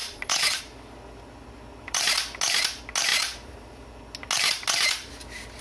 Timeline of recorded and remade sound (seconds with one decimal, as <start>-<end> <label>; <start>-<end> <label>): 0.0-0.6 remade; 0.6-5.6 recorded

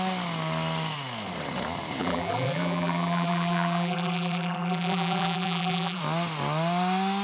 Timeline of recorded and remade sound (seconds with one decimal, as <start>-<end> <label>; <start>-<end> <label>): 0.0-2.0 recorded; 2.0-6.0 remade; 6.0-7.2 recorded

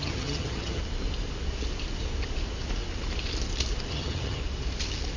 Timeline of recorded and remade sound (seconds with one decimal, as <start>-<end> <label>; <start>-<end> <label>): 0.0-0.8 remade; 0.8-3.9 recorded; 3.9-4.4 remade; 4.4-5.2 recorded

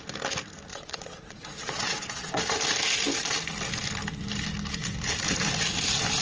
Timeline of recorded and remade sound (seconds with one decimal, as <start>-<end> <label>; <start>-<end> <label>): 0.0-0.7 recorded; 0.7-2.4 remade; 2.4-6.2 recorded

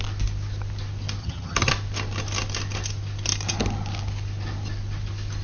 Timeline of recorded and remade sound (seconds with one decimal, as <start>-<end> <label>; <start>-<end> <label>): 0.0-1.2 recorded; 1.2-1.7 remade; 1.7-5.4 recorded

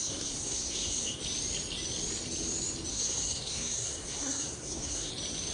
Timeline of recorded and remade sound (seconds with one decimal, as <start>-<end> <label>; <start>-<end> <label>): 0.0-1.2 remade; 1.2-2.9 recorded; 2.9-5.1 remade; 5.1-5.5 recorded